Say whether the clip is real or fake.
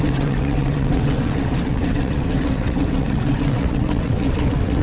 fake